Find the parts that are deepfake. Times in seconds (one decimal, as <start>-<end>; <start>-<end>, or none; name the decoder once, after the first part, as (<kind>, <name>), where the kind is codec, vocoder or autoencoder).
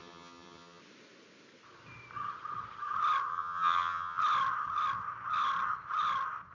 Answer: 0.0-0.8 (vocoder, HiFi-GAN); 3.3-4.2